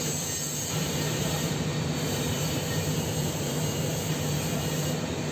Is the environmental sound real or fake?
fake